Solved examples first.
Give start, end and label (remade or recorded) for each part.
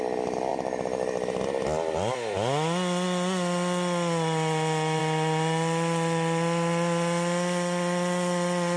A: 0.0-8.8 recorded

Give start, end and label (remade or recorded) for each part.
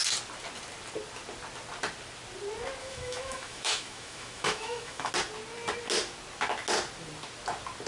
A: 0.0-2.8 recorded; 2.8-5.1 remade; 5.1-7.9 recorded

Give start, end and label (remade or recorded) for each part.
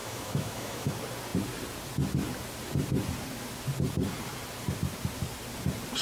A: 0.0-0.9 remade; 0.9-6.0 recorded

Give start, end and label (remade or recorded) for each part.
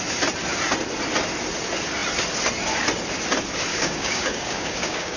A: 0.0-3.7 recorded; 3.7-5.2 remade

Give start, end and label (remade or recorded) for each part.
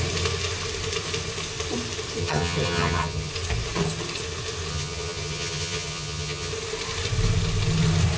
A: 0.0-2.2 recorded; 2.2-3.3 remade; 3.3-4.7 recorded; 4.7-6.5 remade; 6.5-8.2 recorded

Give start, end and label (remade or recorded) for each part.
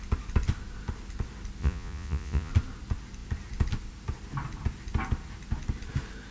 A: 0.0-1.6 recorded; 1.6-2.5 remade; 2.5-6.3 recorded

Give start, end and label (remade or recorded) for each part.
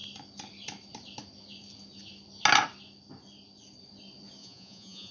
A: 0.0-4.4 recorded; 4.4-5.1 remade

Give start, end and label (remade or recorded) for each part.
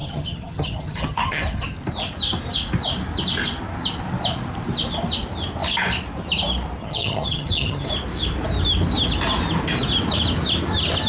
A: 0.0-1.4 remade; 1.4-6.8 recorded; 6.8-7.9 remade; 7.9-11.1 recorded